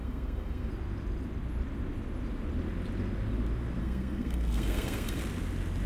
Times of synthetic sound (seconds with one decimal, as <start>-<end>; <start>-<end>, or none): 0.0-0.7; 3.8-5.2